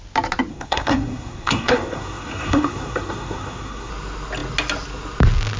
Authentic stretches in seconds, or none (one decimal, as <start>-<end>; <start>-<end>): 0.0-0.5; 3.9-5.6

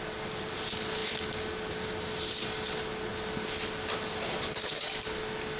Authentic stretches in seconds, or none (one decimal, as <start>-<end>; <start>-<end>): 0.0-5.6

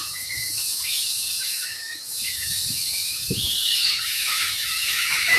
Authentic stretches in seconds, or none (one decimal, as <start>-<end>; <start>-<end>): none

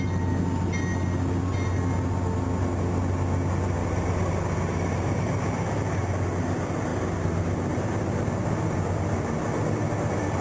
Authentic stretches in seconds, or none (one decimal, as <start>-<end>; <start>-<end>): 0.0-10.4